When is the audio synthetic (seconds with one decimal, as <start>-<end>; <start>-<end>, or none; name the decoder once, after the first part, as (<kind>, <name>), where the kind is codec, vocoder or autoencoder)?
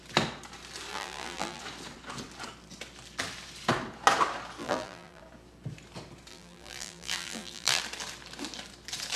0.9-1.6 (vocoder, BigVGAN v2); 4.6-5.2; 6.3-7.8